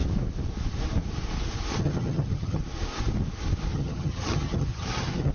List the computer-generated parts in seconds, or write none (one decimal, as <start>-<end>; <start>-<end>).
1.7-2.6; 3.7-5.3